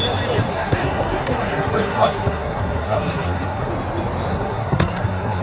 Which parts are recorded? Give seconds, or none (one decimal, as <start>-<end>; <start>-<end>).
0.0-0.5; 3.7-4.3